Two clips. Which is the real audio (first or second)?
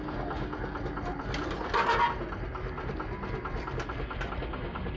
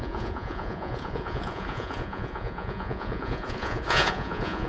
first